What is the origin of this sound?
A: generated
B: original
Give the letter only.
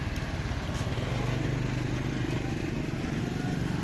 B